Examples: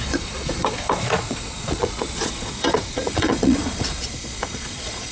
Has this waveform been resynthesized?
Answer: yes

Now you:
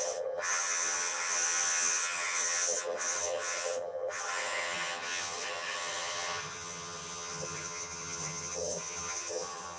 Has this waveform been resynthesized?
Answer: yes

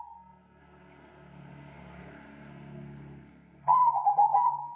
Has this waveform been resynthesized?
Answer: yes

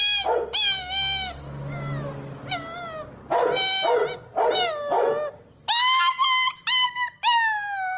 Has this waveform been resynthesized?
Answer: no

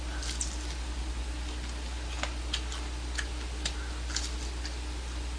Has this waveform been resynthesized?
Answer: no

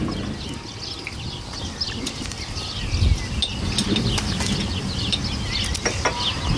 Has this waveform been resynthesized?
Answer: no